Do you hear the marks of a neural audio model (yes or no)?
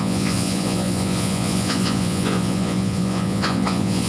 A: yes